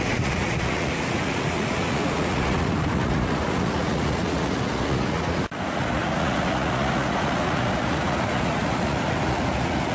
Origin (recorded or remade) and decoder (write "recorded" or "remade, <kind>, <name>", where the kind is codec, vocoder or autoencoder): remade, vocoder, Vocos